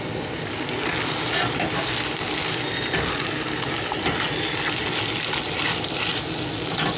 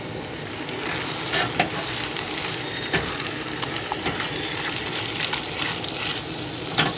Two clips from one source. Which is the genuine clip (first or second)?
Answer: first